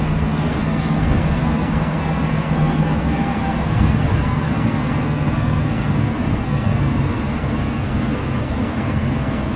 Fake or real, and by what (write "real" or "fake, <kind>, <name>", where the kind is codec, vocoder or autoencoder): fake, codec, SNAC